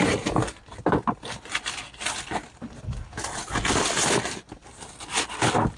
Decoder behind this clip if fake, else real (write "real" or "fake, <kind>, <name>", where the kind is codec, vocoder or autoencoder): real